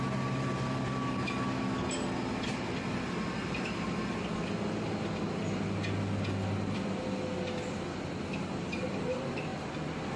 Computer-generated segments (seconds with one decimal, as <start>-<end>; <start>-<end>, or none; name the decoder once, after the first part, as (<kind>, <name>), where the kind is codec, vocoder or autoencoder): none